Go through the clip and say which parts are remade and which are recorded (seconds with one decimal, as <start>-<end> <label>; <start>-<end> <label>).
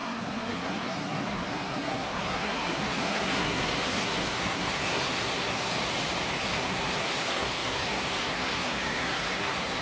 0.0-5.7 remade; 5.7-6.4 recorded; 6.4-9.8 remade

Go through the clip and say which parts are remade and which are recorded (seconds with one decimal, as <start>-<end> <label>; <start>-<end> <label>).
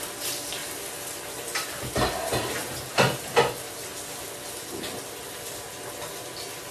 0.0-6.7 recorded